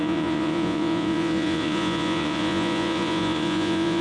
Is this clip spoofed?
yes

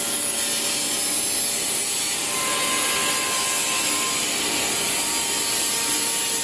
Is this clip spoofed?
no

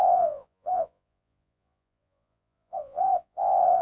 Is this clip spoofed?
yes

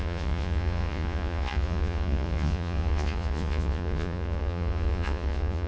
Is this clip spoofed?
yes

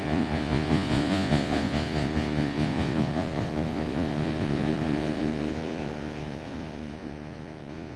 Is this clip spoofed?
yes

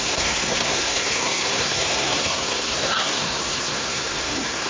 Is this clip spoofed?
yes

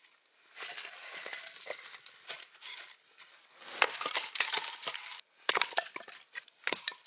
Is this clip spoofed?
no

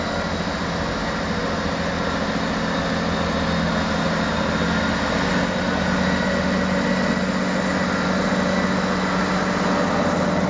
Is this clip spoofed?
no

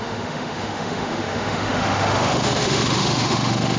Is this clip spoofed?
yes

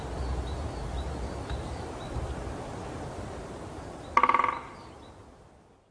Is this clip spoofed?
yes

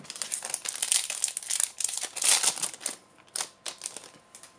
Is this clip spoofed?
no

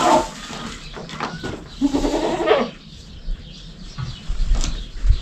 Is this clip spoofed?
no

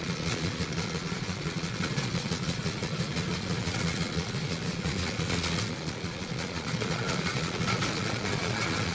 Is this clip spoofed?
yes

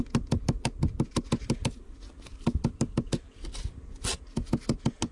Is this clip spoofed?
no